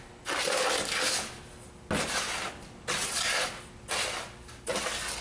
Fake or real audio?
real